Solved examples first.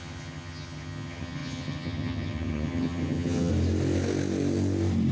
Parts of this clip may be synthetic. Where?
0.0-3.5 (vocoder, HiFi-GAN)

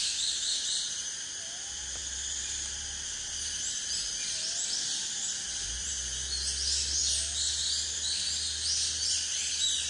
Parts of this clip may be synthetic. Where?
none

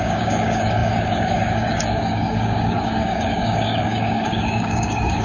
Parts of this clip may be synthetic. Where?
0.0-5.2 (codec, DAC)